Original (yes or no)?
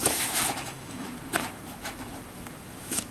no